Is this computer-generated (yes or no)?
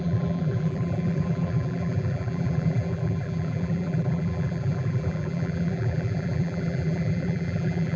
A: yes